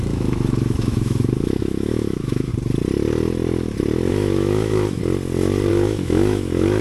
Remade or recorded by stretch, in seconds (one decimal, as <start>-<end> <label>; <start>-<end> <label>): 0.0-2.5 remade; 2.5-4.1 recorded; 4.1-5.0 remade; 5.0-5.7 recorded; 5.7-6.8 remade